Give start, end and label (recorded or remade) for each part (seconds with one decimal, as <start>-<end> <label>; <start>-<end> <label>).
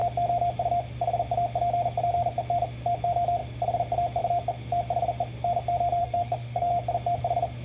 0.0-6.0 recorded; 6.0-6.7 remade; 6.7-7.6 recorded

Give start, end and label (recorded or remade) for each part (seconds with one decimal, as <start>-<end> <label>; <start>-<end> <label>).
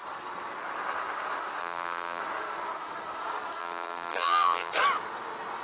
0.0-1.6 recorded; 1.6-2.2 remade; 2.2-3.6 recorded; 3.6-4.7 remade; 4.7-5.6 recorded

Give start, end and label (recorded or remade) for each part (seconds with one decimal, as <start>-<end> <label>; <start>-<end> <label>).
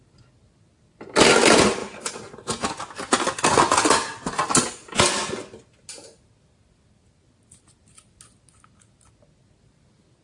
0.0-10.2 recorded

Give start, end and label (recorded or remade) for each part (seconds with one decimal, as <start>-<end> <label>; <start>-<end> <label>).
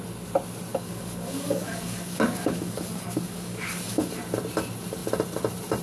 0.0-0.7 recorded; 0.7-4.2 remade; 4.2-5.8 recorded